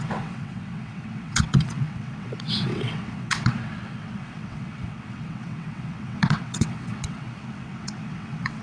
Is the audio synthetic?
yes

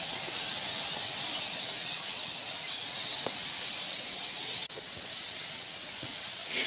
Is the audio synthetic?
yes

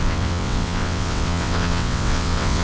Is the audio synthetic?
yes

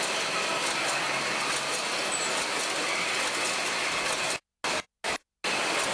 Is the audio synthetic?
no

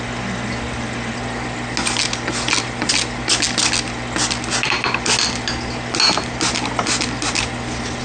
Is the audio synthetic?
no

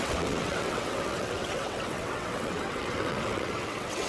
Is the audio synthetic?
yes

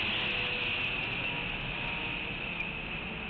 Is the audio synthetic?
no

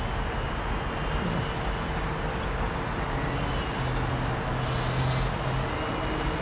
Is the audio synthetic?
no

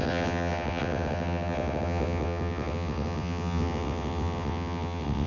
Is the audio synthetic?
yes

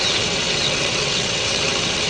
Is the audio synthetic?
yes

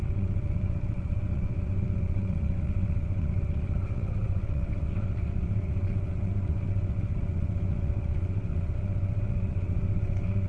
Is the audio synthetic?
yes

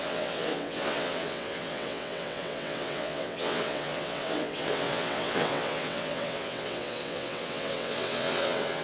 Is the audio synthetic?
yes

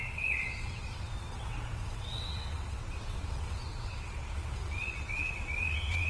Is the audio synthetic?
yes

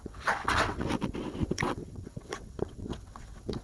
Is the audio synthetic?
yes